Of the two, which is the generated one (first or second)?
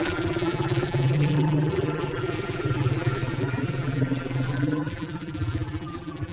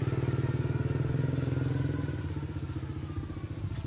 first